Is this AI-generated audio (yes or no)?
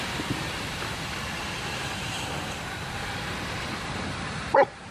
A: yes